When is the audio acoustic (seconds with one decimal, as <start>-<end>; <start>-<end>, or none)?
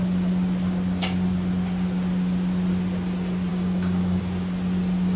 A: 0.0-3.5; 4.2-5.2